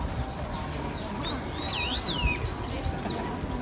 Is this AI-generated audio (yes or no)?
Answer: no